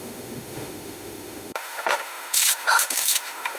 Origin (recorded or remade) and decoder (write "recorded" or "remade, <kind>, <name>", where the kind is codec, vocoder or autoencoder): remade, autoencoder, DAC-VAE